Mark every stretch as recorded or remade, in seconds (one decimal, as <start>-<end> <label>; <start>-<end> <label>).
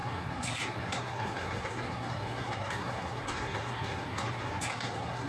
0.0-5.3 remade